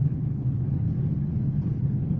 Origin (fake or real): fake